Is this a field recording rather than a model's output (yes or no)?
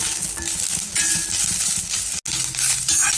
yes